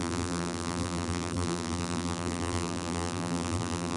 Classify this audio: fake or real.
fake